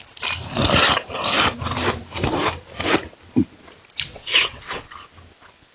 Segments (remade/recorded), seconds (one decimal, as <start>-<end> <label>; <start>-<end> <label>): 0.0-4.1 recorded; 4.1-4.9 remade; 4.9-5.7 recorded